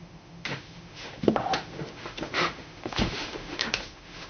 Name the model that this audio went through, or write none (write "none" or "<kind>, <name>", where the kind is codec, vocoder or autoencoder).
autoencoder, DAC-VAE